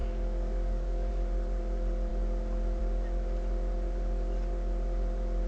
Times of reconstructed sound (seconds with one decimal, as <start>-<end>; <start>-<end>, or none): 0.0-1.1